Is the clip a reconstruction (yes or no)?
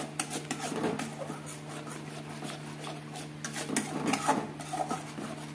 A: no